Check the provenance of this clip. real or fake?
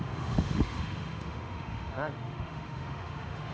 fake